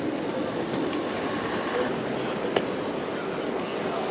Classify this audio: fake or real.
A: real